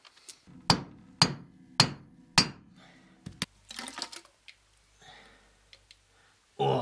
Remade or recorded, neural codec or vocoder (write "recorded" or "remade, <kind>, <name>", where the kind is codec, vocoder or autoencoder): recorded